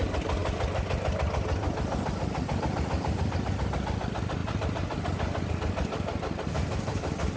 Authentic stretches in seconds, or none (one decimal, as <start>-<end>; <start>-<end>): 0.0-7.4